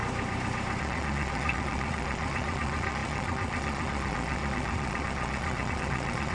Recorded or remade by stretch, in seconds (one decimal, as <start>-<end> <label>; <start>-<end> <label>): 0.0-0.8 recorded; 0.8-6.3 remade